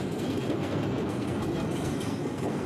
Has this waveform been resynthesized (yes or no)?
yes